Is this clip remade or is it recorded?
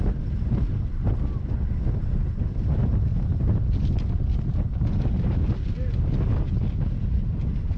recorded